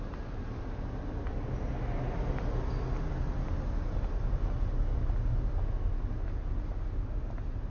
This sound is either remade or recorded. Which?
recorded